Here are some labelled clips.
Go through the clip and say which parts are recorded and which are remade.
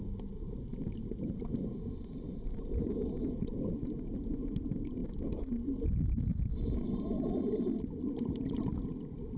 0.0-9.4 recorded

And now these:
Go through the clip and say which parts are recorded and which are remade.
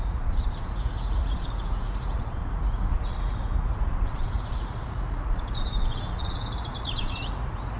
0.0-7.8 remade